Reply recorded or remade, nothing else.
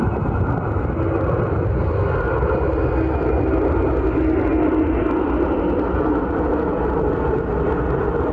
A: recorded